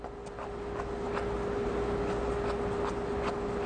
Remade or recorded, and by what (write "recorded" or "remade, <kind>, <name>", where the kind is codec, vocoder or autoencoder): recorded